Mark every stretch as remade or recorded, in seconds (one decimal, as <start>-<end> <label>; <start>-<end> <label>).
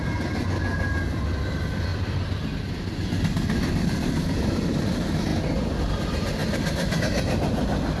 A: 0.0-8.0 recorded